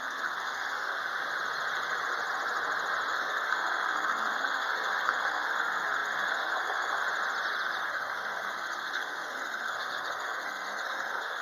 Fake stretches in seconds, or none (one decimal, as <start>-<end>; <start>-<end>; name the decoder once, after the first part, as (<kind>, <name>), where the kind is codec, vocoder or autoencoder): 0.0-1.0 (codec, SNAC); 3.1-7.0; 7.9-11.4